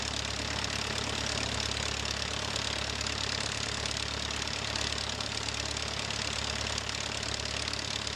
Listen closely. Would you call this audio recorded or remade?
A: recorded